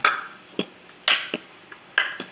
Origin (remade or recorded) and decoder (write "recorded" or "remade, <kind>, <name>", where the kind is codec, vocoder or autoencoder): recorded